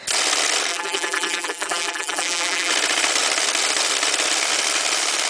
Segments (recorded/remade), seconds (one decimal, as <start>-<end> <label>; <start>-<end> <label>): 0.0-0.7 recorded; 0.7-2.7 remade; 2.7-5.3 recorded